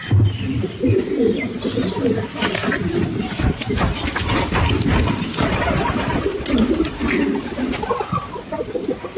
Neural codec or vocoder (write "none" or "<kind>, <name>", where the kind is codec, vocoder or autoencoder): vocoder, BigVGAN v2